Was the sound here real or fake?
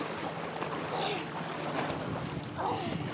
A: real